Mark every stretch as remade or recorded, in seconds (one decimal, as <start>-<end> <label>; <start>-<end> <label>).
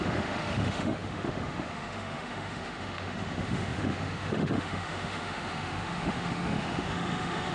0.0-7.5 remade